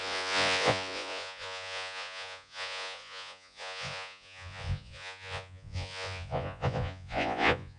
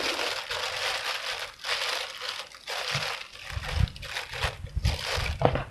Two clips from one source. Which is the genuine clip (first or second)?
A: second